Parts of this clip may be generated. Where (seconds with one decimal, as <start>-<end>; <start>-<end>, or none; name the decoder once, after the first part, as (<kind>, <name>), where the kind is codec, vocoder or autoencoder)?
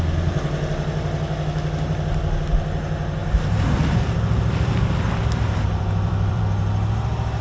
3.2-6.4 (vocoder, BigVGAN v2)